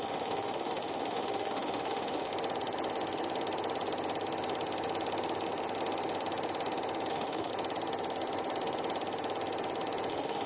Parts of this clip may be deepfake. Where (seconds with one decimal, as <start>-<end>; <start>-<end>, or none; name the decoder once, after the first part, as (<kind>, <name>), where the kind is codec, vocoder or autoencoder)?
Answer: 0.0-2.3 (autoencoder, DAC-VAE); 7.1-7.5; 10.1-10.5